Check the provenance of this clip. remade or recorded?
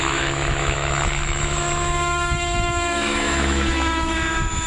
remade